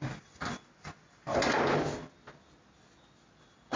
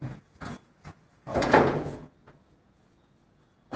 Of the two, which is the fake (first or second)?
second